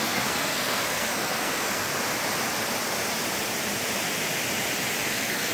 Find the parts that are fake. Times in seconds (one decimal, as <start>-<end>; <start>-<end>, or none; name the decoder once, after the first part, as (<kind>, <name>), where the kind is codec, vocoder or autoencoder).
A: 0.0-1.9 (codec, SNAC); 5.1-5.5